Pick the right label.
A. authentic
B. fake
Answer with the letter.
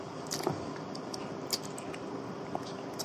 A